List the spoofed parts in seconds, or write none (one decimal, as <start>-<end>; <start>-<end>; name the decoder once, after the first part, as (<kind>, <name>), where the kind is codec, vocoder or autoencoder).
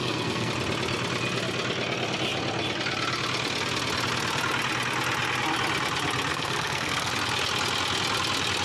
0.0-0.5 (codec, SNAC); 6.3-7.1